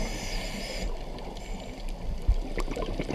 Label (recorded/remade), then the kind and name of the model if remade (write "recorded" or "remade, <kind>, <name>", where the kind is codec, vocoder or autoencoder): recorded